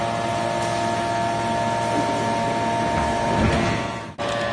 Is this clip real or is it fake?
real